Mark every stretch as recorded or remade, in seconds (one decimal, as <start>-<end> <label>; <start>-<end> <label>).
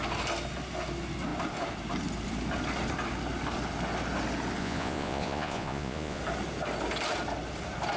0.0-4.6 recorded; 4.6-6.2 remade; 6.2-8.0 recorded